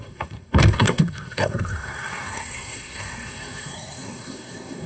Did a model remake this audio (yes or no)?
yes